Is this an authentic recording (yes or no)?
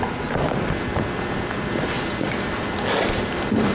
yes